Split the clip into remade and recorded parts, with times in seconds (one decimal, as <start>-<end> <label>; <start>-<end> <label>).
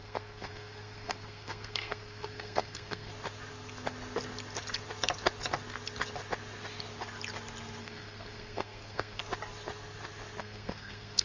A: 0.0-3.1 remade; 3.1-7.8 recorded; 7.8-9.2 remade; 9.2-10.4 recorded; 10.4-11.2 remade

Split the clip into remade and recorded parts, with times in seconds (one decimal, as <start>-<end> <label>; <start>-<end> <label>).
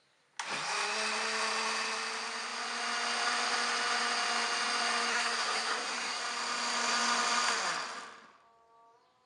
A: 0.0-5.1 recorded; 5.1-6.2 remade; 6.2-9.3 recorded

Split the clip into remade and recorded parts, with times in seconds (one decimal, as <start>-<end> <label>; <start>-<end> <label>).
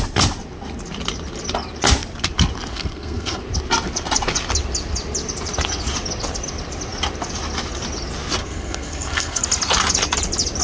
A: 0.0-2.7 recorded; 2.7-3.4 remade; 3.4-8.4 recorded; 8.4-9.4 remade; 9.4-10.6 recorded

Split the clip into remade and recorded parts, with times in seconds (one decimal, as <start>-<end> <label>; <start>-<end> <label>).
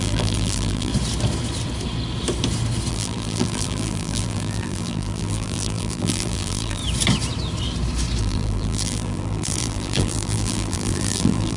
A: 0.0-0.9 remade; 0.9-2.9 recorded; 2.9-6.8 remade; 6.8-8.2 recorded; 8.2-11.6 remade